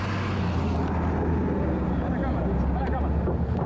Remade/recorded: recorded